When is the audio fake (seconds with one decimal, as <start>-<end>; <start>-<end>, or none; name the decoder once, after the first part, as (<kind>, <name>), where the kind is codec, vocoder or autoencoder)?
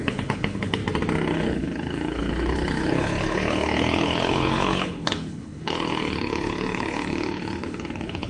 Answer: 0.0-0.8 (codec, HILCodec); 1.3-8.3